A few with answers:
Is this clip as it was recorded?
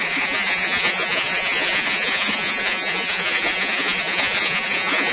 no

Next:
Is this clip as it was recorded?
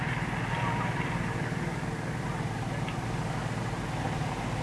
yes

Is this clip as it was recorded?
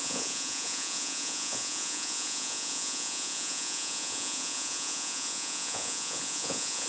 no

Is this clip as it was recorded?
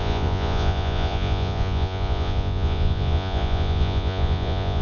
no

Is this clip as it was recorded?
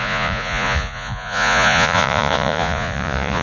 no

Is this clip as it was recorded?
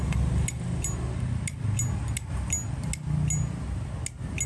yes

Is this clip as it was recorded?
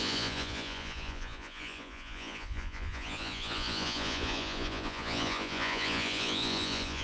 no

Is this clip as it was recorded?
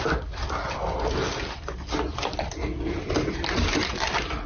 yes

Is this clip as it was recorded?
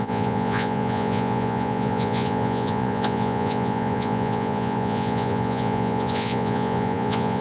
no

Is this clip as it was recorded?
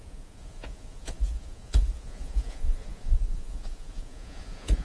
no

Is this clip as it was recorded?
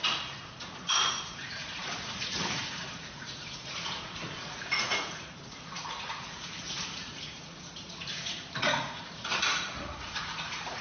no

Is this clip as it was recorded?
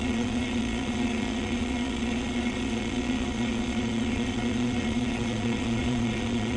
no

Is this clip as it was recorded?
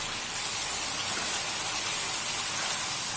yes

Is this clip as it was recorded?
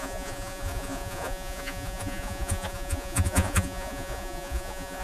no